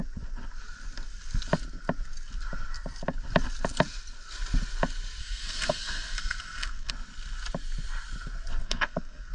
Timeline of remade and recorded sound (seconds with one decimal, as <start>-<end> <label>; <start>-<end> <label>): 0.0-5.2 recorded; 5.2-6.9 remade; 6.9-8.6 recorded; 8.6-9.3 remade